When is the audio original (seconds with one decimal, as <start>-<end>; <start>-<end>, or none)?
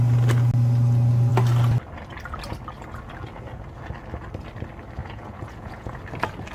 0.0-5.0; 6.0-6.5